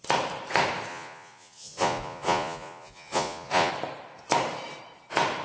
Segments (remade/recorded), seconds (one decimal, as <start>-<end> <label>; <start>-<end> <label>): 0.0-0.9 recorded; 0.9-3.7 remade; 3.7-5.4 recorded